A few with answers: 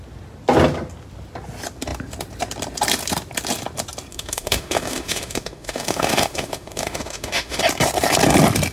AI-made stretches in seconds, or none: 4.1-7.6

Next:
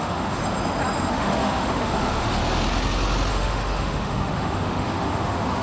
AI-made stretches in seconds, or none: 0.0-0.4; 1.1-2.4; 3.3-5.6

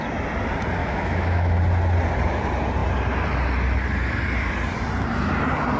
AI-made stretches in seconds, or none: 0.8-1.6